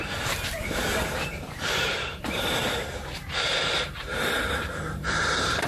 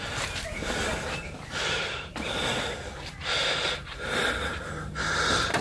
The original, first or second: second